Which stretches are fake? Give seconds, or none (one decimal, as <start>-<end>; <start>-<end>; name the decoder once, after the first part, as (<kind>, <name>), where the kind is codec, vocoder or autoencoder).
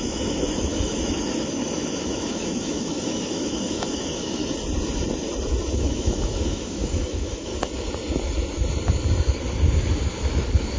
0.0-4.4 (autoencoder, DAC-VAE); 5.7-7.5